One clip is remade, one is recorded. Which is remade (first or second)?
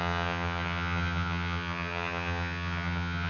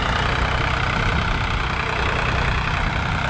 first